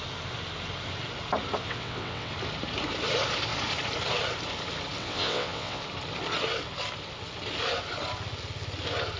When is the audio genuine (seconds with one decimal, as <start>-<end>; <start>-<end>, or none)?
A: 0.0-1.6; 2.3-5.0; 5.8-9.2